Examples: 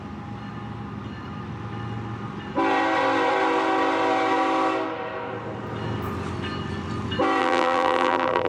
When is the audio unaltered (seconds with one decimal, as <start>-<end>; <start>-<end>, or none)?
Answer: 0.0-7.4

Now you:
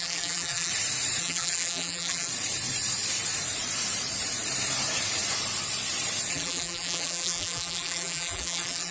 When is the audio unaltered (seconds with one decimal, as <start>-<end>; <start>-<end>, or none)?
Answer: 0.7-1.2; 2.3-6.3

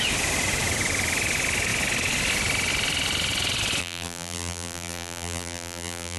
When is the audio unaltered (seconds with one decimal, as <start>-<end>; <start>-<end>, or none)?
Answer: 0.0-3.8